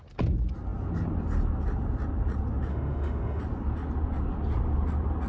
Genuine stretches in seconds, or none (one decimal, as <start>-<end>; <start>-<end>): 0.0-2.7; 3.4-5.3